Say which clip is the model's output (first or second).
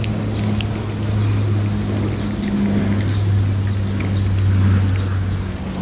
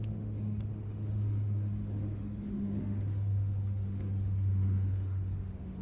second